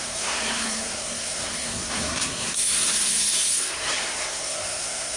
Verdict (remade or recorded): remade